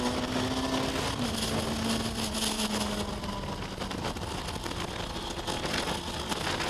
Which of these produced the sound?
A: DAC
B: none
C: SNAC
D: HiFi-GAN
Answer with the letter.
B